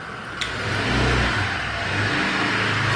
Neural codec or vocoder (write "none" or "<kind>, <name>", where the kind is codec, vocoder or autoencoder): none